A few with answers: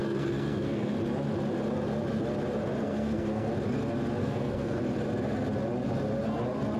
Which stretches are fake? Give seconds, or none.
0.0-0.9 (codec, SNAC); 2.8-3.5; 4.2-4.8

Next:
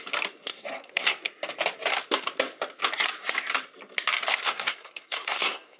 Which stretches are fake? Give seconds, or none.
0.5-1.3 (codec, SNAC); 4.4-5.8

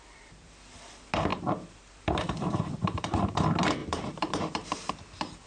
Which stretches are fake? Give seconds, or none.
1.3-3.2 (vocoder, BigVGAN v2); 3.8-4.9